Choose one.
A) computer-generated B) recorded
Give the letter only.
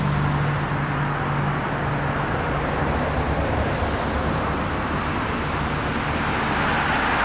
B